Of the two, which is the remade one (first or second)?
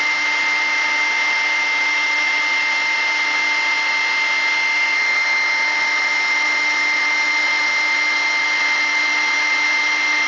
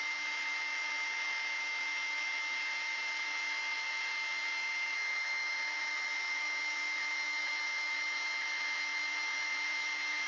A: second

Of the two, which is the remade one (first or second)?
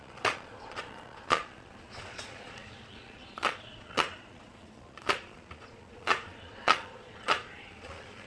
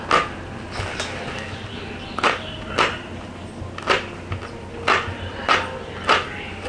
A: first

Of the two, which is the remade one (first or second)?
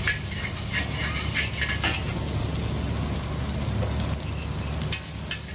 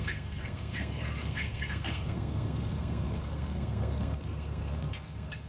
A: second